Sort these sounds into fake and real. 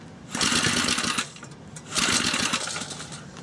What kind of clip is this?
real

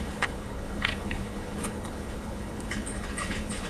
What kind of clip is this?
fake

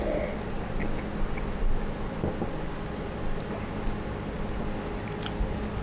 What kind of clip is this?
real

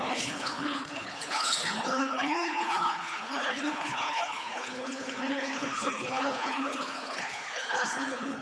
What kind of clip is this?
fake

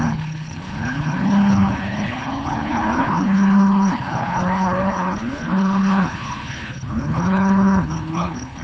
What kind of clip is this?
fake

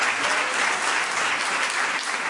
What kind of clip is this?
real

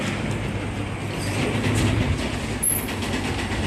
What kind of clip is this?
real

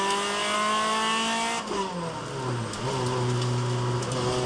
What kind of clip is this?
real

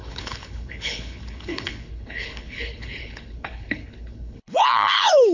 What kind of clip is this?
fake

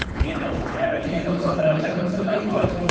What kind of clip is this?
fake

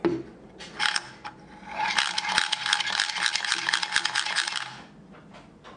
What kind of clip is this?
real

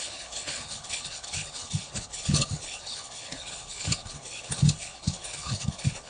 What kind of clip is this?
fake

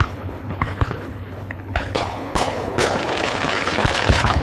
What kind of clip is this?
fake